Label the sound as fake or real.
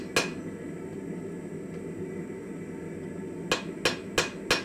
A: real